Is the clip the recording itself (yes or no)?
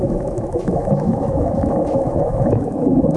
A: no